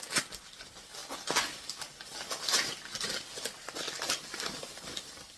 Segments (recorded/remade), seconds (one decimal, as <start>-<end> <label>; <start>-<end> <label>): 0.0-5.4 recorded